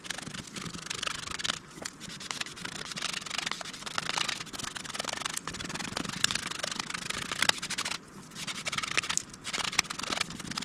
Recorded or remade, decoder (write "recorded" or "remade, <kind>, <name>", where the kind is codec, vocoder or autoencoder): recorded